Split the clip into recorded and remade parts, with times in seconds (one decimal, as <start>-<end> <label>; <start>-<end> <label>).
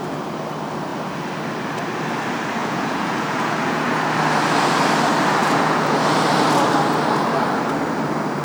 0.0-2.6 recorded; 2.6-4.0 remade; 4.0-5.4 recorded; 5.4-6.0 remade; 6.0-8.4 recorded